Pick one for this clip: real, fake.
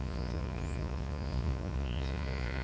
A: fake